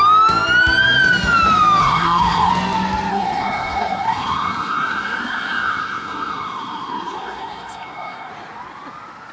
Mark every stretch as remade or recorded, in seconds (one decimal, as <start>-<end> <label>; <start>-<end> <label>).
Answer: 0.0-1.8 recorded; 1.8-2.5 remade; 2.5-3.1 recorded; 3.1-8.3 remade; 8.3-9.3 recorded